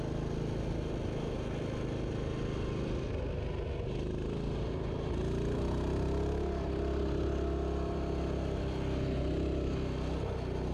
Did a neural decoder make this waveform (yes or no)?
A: no